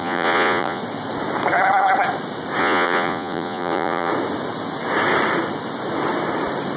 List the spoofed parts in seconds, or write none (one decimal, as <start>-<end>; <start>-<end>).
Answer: 0.0-0.8; 2.6-4.1